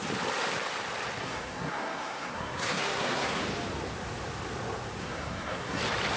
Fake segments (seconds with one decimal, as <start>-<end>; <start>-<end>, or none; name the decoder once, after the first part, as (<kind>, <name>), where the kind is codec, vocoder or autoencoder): 1.2-3.4 (codec, SNAC); 5.0-5.8